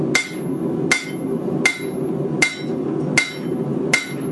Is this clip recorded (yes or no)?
yes